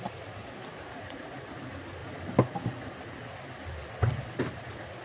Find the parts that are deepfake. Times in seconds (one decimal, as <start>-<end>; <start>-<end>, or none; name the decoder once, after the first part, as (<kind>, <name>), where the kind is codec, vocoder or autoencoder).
0.7-1.5 (vocoder, Vocos)